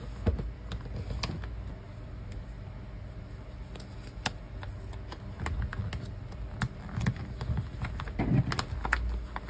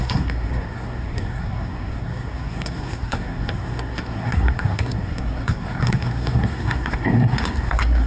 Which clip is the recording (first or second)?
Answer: first